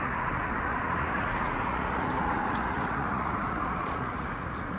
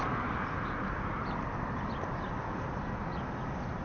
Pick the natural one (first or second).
second